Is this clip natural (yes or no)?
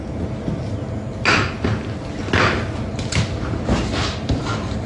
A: yes